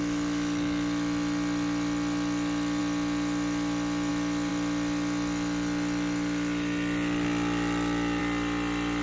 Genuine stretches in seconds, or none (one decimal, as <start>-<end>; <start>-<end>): 0.0-9.0